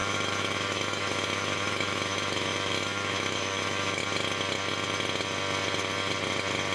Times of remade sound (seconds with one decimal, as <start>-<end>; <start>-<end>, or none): 0.0-4.0